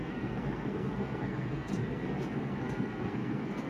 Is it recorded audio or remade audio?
remade